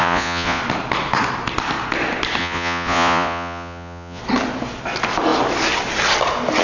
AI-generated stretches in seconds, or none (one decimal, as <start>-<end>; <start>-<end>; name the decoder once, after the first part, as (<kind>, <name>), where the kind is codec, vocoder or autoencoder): 0.0-0.6 (vocoder, Vocos); 2.4-4.2